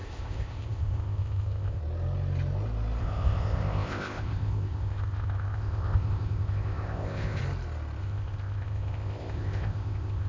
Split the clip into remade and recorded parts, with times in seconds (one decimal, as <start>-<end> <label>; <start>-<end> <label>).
0.0-1.8 remade; 1.8-3.0 recorded; 3.0-7.4 remade; 7.4-8.0 recorded; 8.0-10.3 remade